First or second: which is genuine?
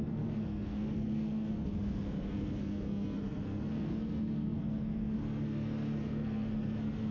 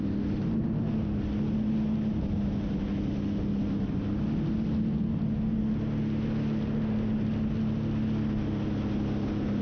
second